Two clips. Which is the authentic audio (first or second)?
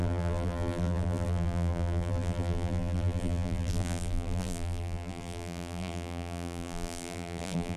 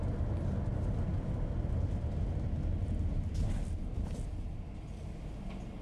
second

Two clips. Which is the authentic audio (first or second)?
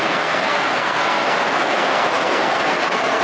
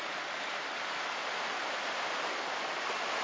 second